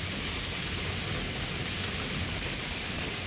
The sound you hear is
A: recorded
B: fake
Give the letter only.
A